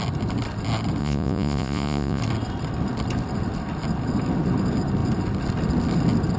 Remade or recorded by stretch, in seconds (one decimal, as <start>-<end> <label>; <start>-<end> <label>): 0.0-1.0 recorded; 1.0-2.2 remade; 2.2-6.4 recorded